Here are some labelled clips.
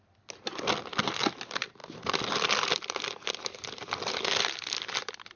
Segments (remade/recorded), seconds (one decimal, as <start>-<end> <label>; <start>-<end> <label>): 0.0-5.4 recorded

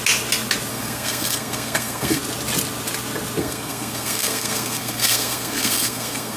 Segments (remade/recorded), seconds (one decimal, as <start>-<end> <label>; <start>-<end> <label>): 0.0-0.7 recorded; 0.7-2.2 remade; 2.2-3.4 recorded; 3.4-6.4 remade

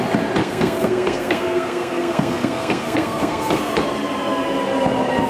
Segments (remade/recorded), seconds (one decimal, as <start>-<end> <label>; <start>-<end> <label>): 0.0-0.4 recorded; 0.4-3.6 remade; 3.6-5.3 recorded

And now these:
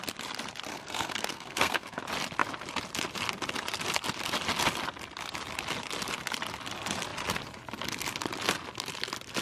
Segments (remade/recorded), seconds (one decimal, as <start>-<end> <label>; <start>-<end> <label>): 0.0-0.7 recorded; 0.7-2.0 remade; 2.0-9.4 recorded